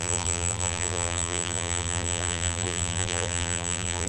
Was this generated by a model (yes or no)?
yes